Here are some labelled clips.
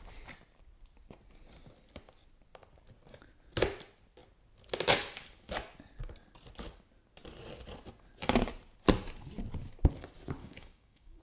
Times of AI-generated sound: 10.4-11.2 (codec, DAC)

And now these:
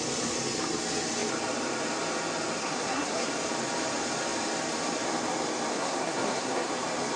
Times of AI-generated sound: 2.6-3.3 (codec, SNAC); 5.7-6.7

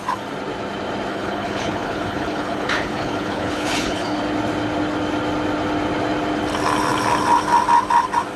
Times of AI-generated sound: 1.1-4.2 (codec, HILCodec)

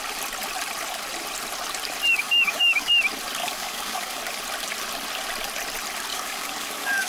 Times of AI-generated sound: 2.1-2.9 (codec, DAC); 3.4-4.2; 6.1-7.1

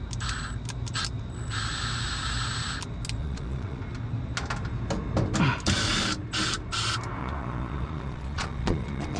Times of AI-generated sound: 3.2-3.8 (vocoder, Vocos); 7.2-9.2

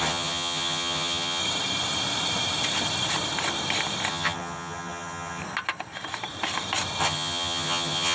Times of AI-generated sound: 0.0-1.4 (vocoder, HiFi-GAN); 4.1-5.4; 7.0-8.1

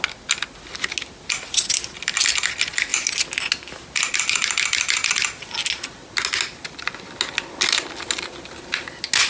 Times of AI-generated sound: none

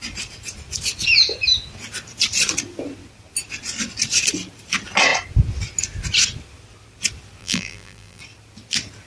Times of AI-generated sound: 7.4-8.2 (vocoder, BigVGAN v2)